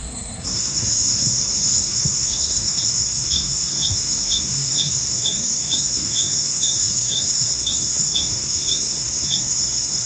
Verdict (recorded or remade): remade